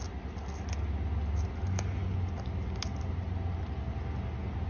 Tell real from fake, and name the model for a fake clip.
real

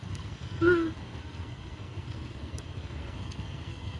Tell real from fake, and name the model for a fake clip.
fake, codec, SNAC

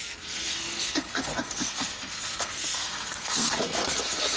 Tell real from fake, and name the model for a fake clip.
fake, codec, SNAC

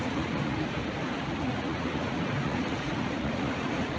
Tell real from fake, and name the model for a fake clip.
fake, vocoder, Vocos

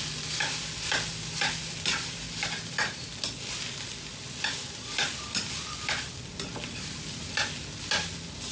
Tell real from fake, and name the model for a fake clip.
real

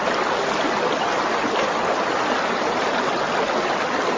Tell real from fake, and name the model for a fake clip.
real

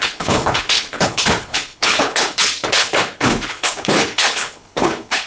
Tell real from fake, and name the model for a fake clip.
fake, codec, HILCodec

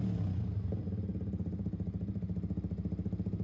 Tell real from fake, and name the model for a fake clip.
real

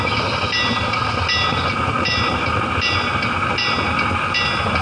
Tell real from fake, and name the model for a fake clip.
real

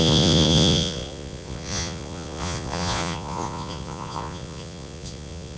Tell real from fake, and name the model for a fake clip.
fake, vocoder, Vocos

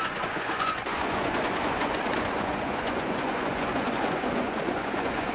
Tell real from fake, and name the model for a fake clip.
fake, vocoder, Vocos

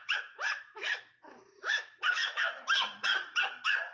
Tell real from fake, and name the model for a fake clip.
fake, autoencoder, DAC-VAE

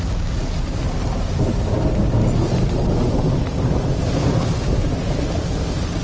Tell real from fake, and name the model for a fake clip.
real